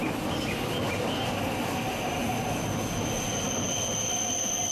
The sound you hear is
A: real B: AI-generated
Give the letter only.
A